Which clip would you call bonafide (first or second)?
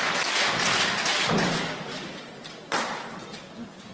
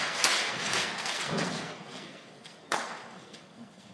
first